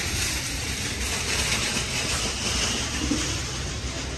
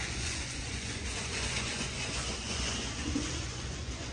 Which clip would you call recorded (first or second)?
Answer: first